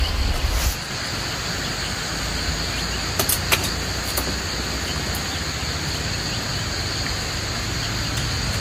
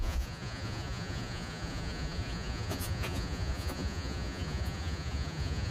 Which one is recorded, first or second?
first